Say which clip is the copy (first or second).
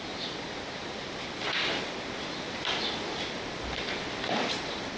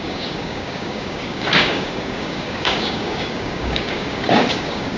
second